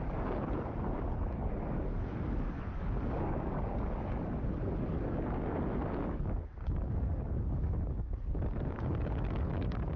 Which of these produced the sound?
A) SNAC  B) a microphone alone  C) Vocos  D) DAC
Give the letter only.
D